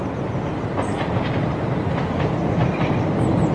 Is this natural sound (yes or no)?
yes